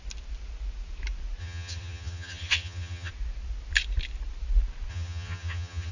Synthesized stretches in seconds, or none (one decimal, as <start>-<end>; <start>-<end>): 1.4-3.1; 4.9-5.9

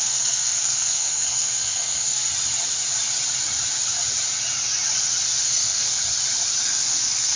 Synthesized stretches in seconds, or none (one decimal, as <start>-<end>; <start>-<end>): 0.0-2.3; 5.4-6.0; 6.6-7.3

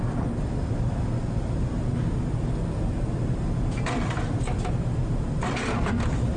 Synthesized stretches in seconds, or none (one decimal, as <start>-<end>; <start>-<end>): none

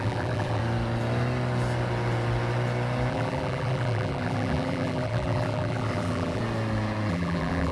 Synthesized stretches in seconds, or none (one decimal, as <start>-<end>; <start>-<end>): 0.0-0.6; 3.1-6.4; 7.1-7.7

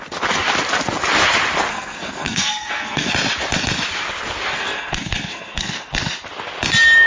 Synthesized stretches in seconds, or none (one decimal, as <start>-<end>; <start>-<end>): 1.7-3.1; 4.5-5.9

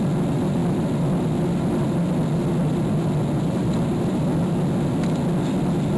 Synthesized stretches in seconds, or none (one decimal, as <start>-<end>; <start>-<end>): none

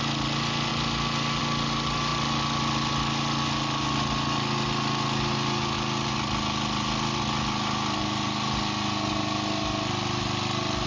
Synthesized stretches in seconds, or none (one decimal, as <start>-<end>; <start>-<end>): none